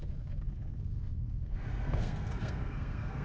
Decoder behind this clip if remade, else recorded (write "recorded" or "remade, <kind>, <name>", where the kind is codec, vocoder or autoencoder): remade, codec, SNAC